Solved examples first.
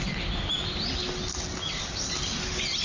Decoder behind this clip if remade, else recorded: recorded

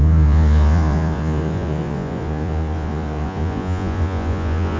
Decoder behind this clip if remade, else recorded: remade, vocoder, Vocos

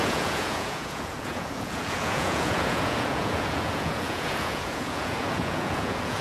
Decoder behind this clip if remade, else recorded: remade, vocoder, Vocos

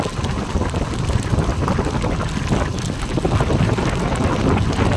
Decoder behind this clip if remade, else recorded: recorded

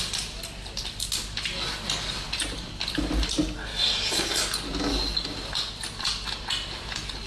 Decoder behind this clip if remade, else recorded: recorded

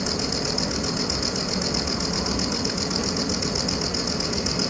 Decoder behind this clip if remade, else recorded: recorded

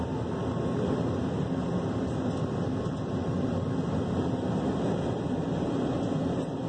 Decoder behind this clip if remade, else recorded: recorded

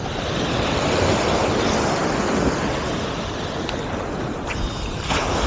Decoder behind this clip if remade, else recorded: recorded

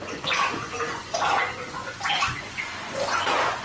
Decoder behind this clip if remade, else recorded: remade, vocoder, Vocos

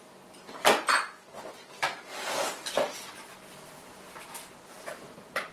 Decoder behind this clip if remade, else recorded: recorded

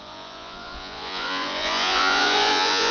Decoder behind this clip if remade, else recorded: remade, vocoder, Vocos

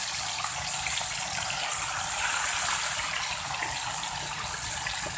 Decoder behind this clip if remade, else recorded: recorded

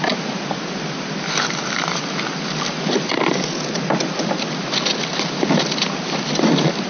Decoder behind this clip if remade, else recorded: recorded